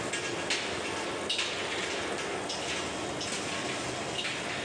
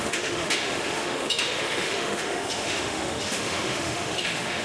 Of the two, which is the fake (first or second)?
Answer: second